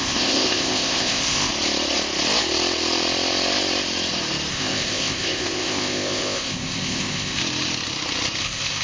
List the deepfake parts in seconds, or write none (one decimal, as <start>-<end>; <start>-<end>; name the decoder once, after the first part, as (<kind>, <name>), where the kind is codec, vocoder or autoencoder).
0.0-1.5 (codec, ZipCodec); 4.5-7.4; 8.4-8.8